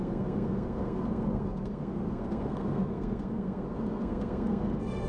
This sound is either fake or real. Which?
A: fake